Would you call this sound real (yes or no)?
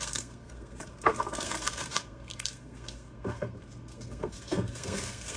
no